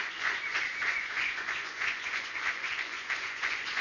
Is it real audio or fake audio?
fake